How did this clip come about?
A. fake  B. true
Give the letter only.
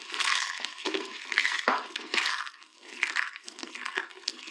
A